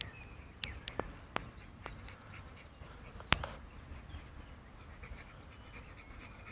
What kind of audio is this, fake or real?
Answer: real